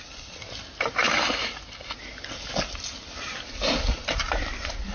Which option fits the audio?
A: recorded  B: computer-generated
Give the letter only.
A